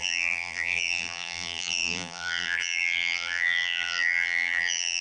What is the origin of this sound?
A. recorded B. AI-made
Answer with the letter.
B